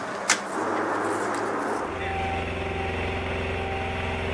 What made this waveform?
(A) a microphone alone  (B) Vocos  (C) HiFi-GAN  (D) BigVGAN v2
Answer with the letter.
A